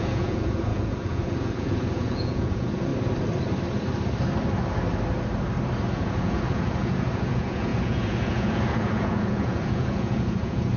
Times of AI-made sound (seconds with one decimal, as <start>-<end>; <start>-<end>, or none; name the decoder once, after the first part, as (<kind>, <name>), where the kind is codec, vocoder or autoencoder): 0.0-2.9 (vocoder, Vocos); 5.9-10.8